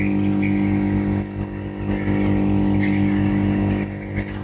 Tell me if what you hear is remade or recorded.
recorded